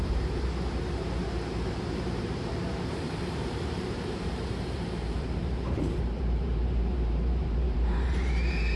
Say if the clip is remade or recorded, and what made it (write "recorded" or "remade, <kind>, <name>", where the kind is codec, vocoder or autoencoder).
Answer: remade, vocoder, BigVGAN v2